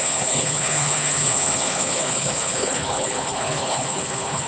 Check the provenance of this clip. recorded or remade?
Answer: remade